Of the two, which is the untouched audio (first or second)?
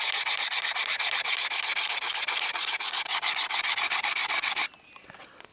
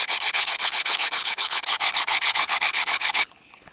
first